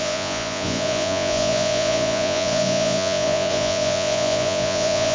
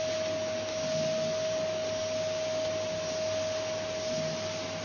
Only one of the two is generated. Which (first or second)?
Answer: first